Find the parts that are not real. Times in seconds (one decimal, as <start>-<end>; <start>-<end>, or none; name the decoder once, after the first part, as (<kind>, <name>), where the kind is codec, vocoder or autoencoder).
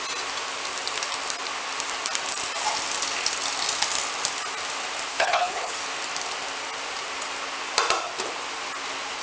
5.1-5.8 (codec, HILCodec)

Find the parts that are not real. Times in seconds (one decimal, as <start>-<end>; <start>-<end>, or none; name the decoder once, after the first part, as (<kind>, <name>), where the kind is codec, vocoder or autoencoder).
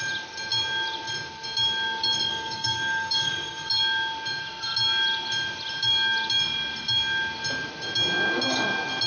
2.3-3.7 (codec, DAC)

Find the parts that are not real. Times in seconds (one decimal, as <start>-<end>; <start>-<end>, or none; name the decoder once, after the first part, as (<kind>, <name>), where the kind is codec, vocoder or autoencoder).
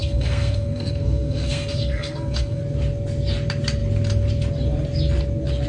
0.0-2.6 (codec, SNAC)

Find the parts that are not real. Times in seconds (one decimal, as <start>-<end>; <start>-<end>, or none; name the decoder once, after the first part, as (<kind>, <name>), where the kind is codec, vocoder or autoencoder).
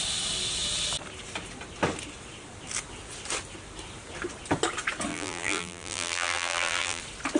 5.1-7.0 (vocoder, BigVGAN v2)